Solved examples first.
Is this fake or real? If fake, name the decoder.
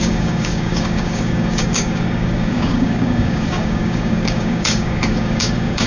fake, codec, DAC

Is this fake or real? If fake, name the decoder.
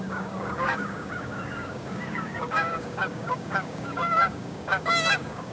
fake, codec, DAC